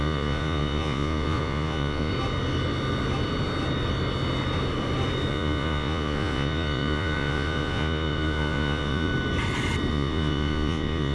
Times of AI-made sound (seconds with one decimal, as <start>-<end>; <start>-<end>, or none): 0.0-2.1; 5.3-9.1; 9.9-11.1